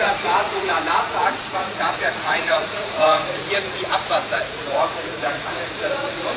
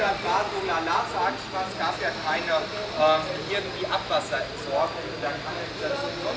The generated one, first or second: first